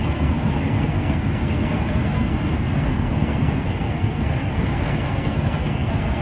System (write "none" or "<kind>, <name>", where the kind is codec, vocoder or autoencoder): codec, SNAC